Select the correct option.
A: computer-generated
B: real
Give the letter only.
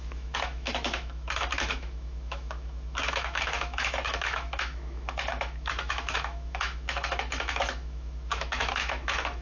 A